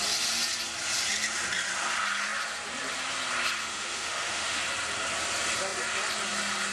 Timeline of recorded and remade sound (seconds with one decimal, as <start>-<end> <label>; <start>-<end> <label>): 0.0-3.6 recorded; 3.6-4.6 remade; 4.6-6.7 recorded